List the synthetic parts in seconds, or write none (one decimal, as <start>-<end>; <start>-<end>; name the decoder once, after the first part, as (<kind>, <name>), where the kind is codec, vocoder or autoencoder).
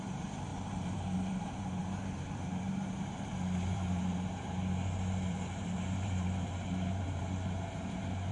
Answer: 0.0-8.3 (vocoder, BigVGAN v2)